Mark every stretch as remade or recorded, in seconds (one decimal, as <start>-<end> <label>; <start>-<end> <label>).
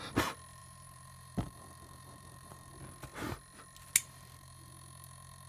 0.0-0.6 recorded; 0.6-2.7 remade; 2.7-4.0 recorded; 4.0-4.7 remade; 4.7-5.5 recorded